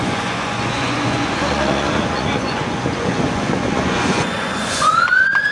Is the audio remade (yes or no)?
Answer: yes